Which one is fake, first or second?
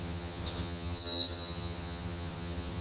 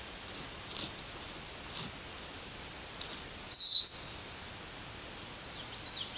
first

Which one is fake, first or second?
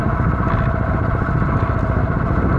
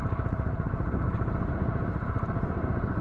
second